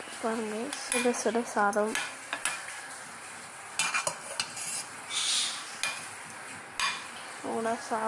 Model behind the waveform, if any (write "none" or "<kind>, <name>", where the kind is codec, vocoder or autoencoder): none